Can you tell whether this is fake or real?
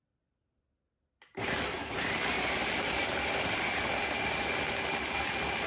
real